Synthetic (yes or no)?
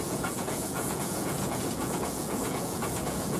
yes